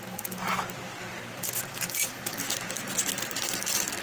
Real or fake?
real